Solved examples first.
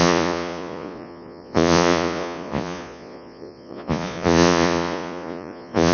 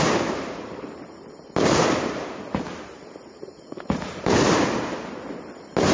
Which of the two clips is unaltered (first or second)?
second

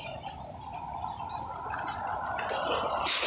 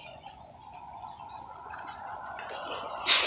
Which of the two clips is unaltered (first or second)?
first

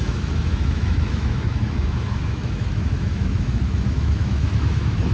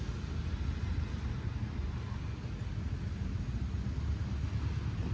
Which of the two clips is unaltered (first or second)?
second